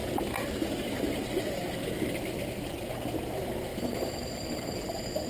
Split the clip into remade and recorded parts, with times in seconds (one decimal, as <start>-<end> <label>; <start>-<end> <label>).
0.0-3.7 recorded; 3.7-4.8 remade; 4.8-5.3 recorded